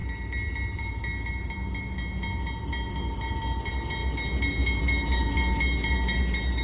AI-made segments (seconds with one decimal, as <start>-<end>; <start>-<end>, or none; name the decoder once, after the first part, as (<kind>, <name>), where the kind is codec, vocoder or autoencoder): none